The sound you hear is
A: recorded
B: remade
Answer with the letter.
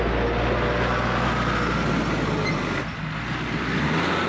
A